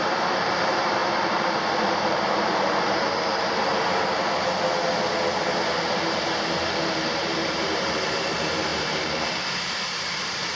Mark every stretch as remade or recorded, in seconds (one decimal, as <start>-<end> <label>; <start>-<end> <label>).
0.0-3.7 remade; 3.7-5.8 recorded; 5.8-10.6 remade